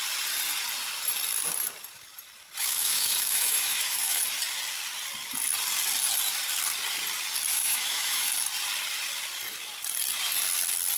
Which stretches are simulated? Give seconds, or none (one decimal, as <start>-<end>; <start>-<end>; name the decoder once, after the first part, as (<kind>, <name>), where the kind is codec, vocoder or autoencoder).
2.6-4.2 (autoencoder, DAC-VAE); 7.5-8.3